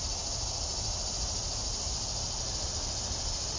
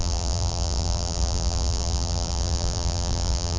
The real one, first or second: first